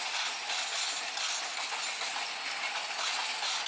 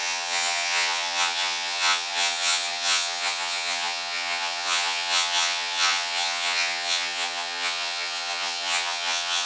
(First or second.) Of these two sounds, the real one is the first